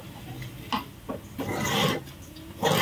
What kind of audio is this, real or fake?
real